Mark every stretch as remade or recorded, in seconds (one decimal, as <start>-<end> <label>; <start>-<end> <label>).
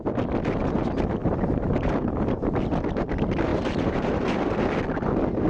0.0-1.2 recorded; 1.2-2.6 remade; 2.6-3.5 recorded; 3.5-4.1 remade; 4.1-5.5 recorded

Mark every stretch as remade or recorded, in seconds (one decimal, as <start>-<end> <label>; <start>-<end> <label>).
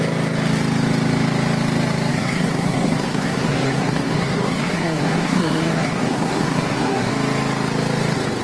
0.0-2.1 recorded; 2.1-7.1 remade; 7.1-8.4 recorded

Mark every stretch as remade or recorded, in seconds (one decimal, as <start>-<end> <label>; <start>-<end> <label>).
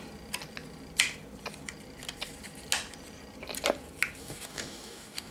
0.0-4.2 recorded; 4.2-5.3 remade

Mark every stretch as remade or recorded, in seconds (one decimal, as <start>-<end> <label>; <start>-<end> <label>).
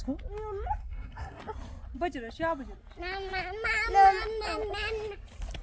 0.0-0.8 recorded; 0.8-1.4 remade; 1.4-5.6 recorded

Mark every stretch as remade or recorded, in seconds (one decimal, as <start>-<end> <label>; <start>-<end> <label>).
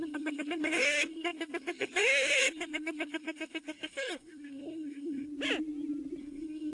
0.0-5.3 remade; 5.3-6.2 recorded; 6.2-6.7 remade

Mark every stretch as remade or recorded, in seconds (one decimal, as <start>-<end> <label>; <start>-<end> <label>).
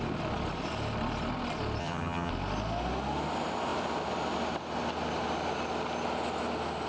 0.0-1.8 recorded; 1.8-2.3 remade; 2.3-6.9 recorded